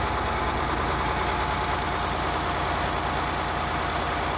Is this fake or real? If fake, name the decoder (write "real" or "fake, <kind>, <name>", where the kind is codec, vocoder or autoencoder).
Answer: real